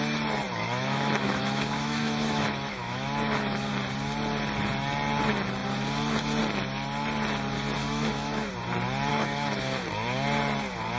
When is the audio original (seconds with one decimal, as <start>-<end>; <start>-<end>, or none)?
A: 0.0-0.6; 3.7-7.8; 8.5-9.1; 9.9-11.0